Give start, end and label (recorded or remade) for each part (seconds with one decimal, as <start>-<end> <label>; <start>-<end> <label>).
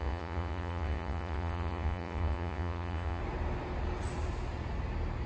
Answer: 0.0-3.2 remade; 3.2-5.3 recorded